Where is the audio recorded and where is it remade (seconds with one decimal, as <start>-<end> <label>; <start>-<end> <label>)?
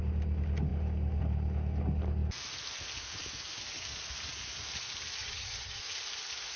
0.0-5.2 recorded; 5.2-5.8 remade; 5.8-6.6 recorded